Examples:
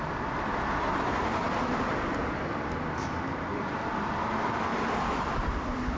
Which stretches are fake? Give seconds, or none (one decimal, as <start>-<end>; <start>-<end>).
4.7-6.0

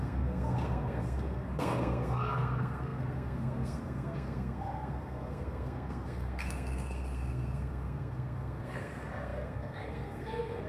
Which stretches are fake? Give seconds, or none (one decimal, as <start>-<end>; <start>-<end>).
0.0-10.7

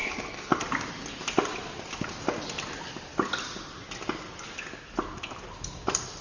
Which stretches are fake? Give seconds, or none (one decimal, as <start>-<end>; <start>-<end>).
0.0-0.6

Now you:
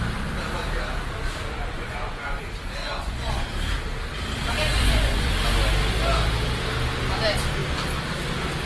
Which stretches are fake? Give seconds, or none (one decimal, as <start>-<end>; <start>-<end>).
1.6-2.4; 2.8-3.5; 4.7-5.3

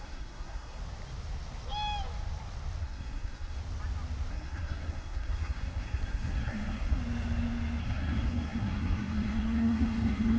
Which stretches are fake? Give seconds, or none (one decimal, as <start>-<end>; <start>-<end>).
0.0-0.8; 2.8-3.6; 4.3-7.0; 7.8-10.4

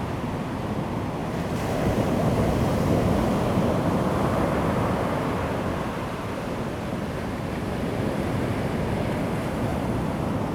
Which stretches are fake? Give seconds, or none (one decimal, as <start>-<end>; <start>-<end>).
1.2-2.3

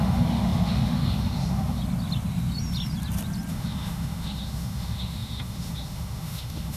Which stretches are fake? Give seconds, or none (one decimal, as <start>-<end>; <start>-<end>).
0.0-1.8; 3.5-6.8